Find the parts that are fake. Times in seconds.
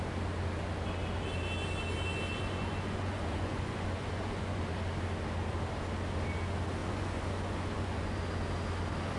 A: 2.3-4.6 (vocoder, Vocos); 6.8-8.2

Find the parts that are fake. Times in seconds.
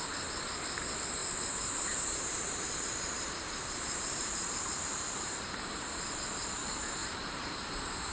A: 1.2-5.6 (vocoder, BigVGAN v2); 7.0-8.1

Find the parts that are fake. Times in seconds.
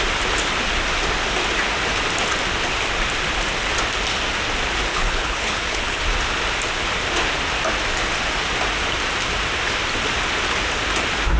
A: 4.9-6.0 (codec, HILCodec)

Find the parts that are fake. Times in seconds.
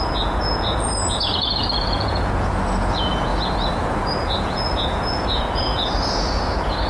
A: 0.0-6.9 (vocoder, Vocos)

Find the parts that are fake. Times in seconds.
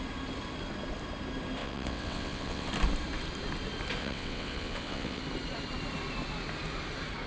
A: 1.6-2.7 (vocoder, WaveNeXt); 4.0-5.2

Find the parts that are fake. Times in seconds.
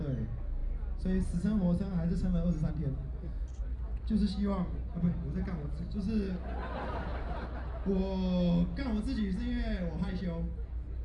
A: none